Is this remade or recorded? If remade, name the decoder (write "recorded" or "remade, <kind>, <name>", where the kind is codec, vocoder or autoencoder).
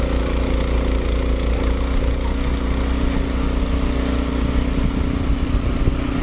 recorded